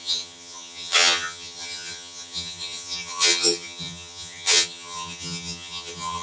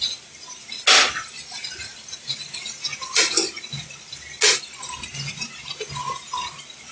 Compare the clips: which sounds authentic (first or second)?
second